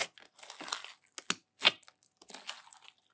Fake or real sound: real